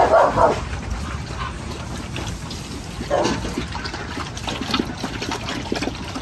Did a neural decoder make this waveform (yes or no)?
no